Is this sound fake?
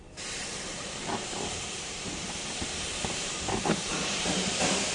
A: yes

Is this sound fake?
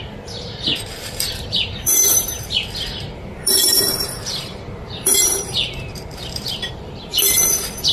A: yes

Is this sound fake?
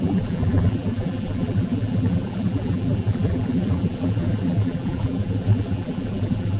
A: yes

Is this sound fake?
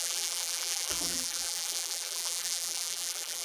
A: yes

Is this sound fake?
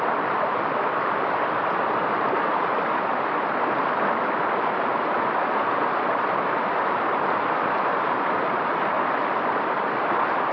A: yes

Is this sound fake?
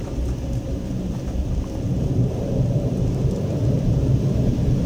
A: yes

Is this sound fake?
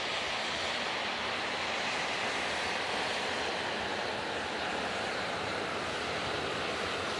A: no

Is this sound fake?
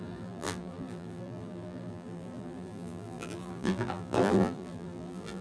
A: yes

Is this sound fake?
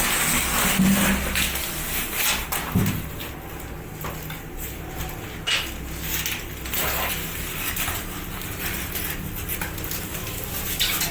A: no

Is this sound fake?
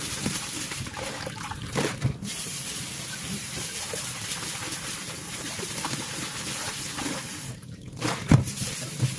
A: yes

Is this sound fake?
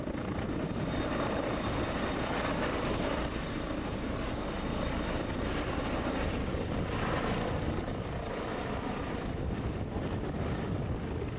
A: yes